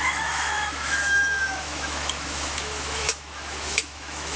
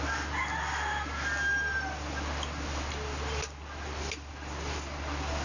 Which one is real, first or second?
second